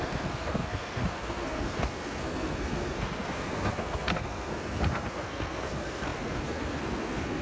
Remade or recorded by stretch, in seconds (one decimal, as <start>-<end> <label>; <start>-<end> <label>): 0.0-7.4 remade